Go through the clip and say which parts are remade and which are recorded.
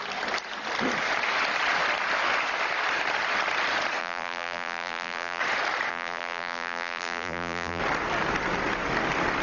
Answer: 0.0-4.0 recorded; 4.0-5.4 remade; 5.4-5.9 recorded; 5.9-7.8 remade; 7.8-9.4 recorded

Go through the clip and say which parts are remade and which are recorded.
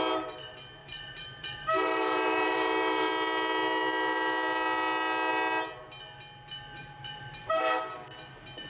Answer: 0.0-0.8 recorded; 0.8-3.1 remade; 3.1-6.8 recorded; 6.8-7.6 remade; 7.6-8.7 recorded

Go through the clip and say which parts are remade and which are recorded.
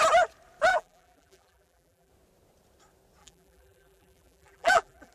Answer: 0.0-0.7 recorded; 0.7-2.1 remade; 2.1-3.2 recorded; 3.2-5.1 remade